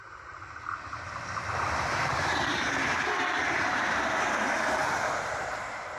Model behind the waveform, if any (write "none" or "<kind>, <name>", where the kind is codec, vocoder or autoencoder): vocoder, BigVGAN v2